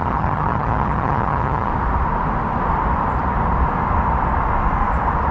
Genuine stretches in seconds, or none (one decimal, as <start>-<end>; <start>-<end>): 1.7-5.3